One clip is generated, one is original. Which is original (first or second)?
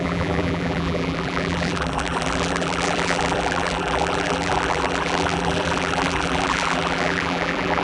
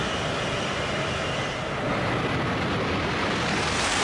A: second